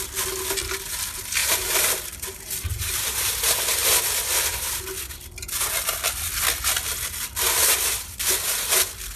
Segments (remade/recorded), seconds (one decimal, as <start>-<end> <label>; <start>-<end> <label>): 0.0-1.4 recorded; 1.4-2.0 remade; 2.0-2.7 recorded; 2.7-3.3 remade; 3.3-9.2 recorded